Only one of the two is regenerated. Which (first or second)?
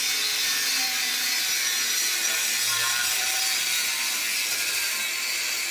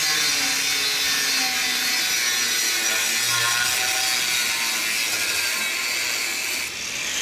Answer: first